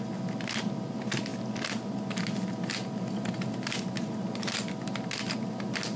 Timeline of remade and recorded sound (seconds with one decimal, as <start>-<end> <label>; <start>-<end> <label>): 0.0-6.0 recorded